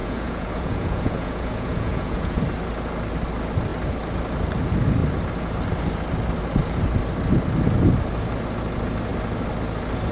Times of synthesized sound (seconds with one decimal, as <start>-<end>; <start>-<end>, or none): 0.0-2.4